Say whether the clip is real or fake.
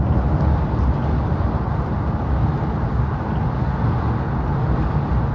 real